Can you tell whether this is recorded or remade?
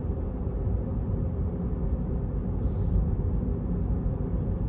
recorded